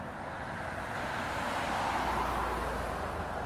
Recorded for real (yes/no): yes